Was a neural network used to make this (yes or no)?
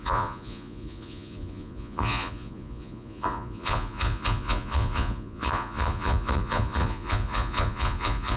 yes